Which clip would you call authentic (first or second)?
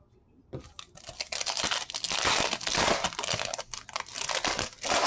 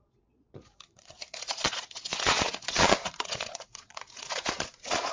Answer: first